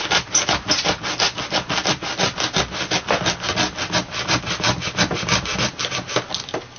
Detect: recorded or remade recorded